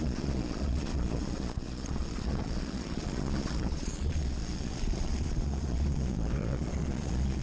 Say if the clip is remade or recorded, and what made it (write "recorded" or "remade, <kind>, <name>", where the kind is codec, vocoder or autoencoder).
remade, vocoder, Vocos